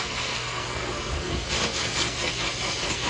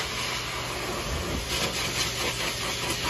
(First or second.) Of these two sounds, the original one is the second